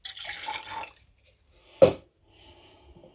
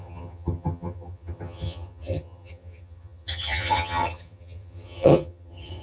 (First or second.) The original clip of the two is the first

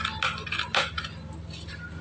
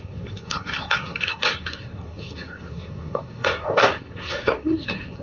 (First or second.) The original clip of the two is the first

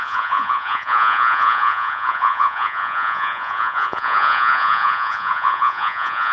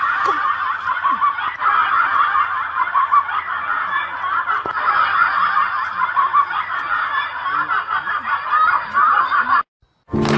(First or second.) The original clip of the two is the second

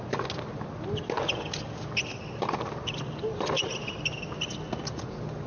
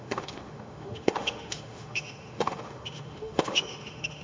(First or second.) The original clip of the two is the first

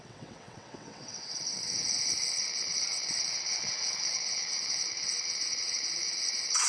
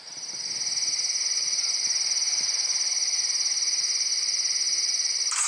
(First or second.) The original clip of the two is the second